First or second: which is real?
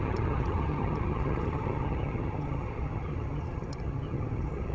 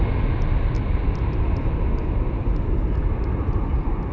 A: second